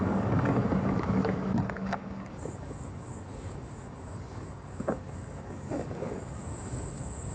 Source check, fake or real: fake